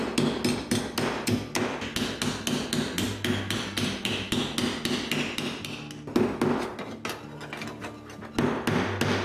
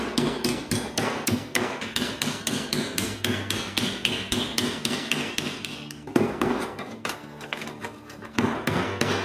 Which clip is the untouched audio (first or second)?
first